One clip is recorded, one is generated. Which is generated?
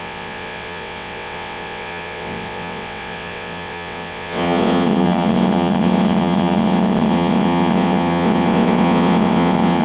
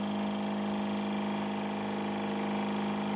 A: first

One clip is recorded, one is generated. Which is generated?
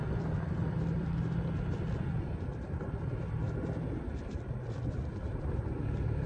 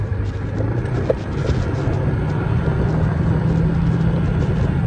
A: first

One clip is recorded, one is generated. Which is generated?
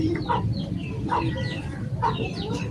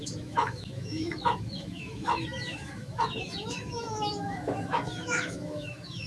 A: second